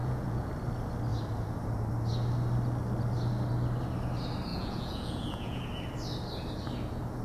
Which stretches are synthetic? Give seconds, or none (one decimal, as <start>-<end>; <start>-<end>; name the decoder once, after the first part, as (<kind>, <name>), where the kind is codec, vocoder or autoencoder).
0.0-0.5 (vocoder, Vocos); 4.5-5.6

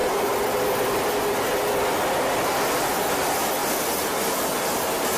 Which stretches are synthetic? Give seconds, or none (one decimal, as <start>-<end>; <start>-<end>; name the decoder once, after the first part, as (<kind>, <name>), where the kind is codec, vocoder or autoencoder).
none

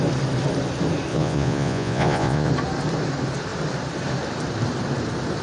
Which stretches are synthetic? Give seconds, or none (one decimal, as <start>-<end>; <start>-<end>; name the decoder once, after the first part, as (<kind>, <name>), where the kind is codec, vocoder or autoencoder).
1.1-2.5 (vocoder, Vocos)